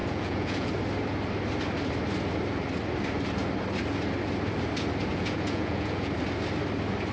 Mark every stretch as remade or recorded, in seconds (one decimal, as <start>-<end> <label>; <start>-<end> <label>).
0.0-0.7 remade; 0.7-5.1 recorded; 5.1-6.1 remade; 6.1-7.1 recorded